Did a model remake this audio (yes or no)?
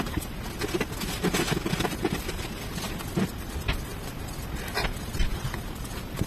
no